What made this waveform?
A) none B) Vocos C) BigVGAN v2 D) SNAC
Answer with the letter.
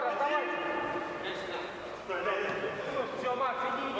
A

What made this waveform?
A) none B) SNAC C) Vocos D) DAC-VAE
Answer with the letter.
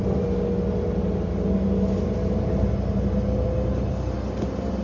A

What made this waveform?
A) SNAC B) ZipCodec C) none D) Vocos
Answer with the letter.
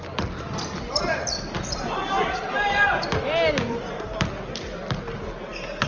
C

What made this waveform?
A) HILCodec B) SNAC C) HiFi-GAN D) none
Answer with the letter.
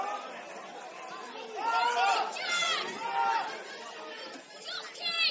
D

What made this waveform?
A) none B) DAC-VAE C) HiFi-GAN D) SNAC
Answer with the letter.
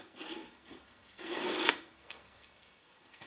D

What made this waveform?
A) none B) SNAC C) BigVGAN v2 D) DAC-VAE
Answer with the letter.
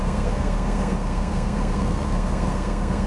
B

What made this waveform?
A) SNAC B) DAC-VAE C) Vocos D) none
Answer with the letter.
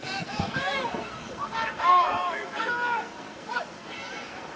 A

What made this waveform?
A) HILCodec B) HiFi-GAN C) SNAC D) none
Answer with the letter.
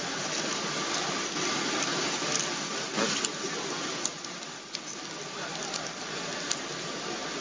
D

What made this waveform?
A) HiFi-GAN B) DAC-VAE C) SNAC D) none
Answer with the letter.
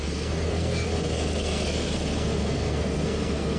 C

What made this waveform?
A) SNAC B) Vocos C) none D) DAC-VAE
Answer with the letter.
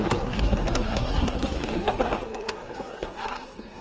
A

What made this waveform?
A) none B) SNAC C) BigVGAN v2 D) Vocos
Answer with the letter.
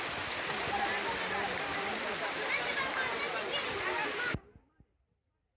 A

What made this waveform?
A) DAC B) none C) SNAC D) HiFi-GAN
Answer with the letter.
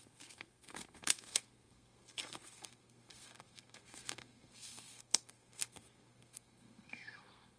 C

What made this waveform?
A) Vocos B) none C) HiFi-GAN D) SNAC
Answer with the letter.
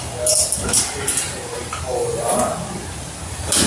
B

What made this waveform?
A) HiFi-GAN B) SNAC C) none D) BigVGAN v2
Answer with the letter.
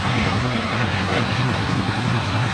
B